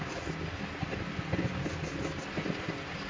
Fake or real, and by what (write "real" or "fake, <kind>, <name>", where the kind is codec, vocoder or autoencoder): real